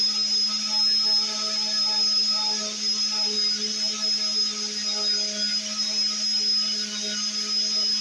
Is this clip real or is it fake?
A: real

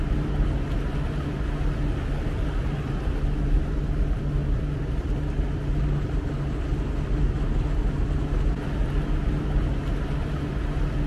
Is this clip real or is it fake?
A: real